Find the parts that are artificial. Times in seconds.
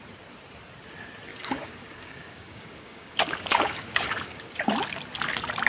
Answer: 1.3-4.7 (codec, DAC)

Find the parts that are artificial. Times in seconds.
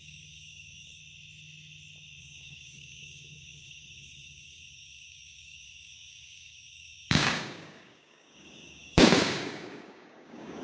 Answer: 0.0-1.0 (codec, DAC); 2.2-10.6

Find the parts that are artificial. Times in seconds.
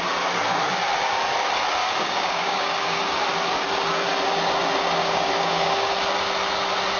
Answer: 1.8-3.1 (codec, DAC); 5.0-5.9